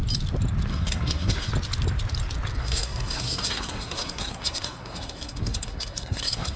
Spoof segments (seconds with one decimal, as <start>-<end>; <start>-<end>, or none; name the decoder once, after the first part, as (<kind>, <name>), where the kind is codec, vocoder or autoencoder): 0.7-1.5 (codec, SNAC); 2.6-6.6